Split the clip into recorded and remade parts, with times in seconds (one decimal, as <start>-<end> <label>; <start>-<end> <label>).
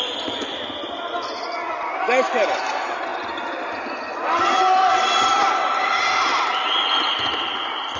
0.0-8.0 recorded